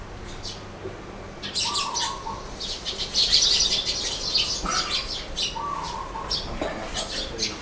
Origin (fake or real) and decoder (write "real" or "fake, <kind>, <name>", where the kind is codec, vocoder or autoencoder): real